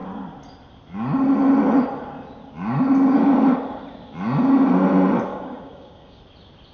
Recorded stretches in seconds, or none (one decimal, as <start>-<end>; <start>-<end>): 0.0-5.3; 6.2-6.7